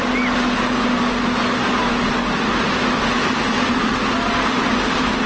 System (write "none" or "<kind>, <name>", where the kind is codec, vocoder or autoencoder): none